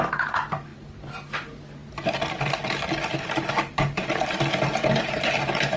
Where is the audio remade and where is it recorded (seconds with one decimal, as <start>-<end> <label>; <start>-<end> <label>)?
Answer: 0.0-5.8 recorded